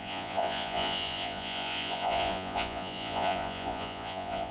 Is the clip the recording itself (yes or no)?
no